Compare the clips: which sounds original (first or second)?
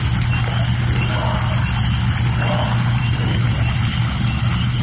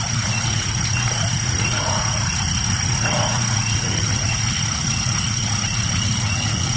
first